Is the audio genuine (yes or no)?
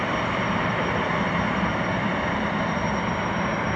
yes